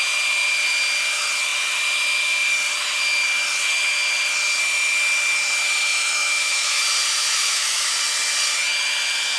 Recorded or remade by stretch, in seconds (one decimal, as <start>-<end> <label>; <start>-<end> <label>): 0.0-5.9 recorded; 5.9-6.8 remade; 6.8-7.3 recorded; 7.3-7.9 remade; 7.9-9.4 recorded